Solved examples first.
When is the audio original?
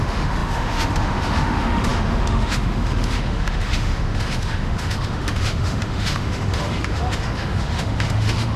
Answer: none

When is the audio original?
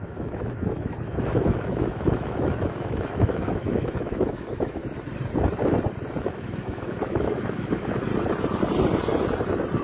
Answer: 4.8-6.2; 8.1-9.8